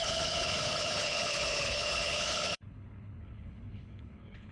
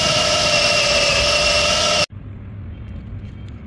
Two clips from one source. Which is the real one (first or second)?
second